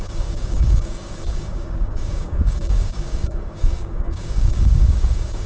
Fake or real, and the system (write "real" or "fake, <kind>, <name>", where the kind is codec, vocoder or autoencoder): fake, codec, DAC